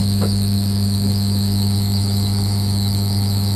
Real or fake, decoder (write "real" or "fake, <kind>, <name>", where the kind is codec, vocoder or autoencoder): fake, autoencoder, DAC-VAE